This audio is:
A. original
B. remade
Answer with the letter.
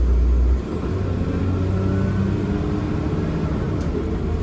A